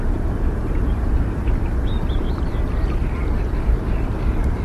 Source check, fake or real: fake